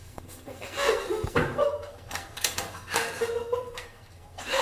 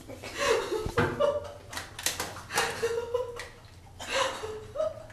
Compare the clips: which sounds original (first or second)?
second